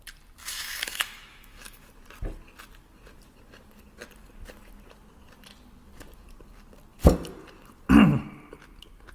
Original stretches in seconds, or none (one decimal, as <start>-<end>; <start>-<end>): 0.0-0.4; 1.9-9.1